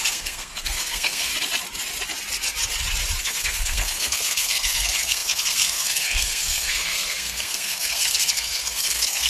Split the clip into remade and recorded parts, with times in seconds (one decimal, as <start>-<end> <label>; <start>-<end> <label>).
0.0-1.3 remade; 1.3-3.2 recorded; 3.2-9.3 remade